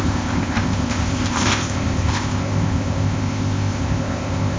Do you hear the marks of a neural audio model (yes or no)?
yes